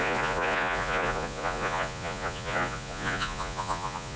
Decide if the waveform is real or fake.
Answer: fake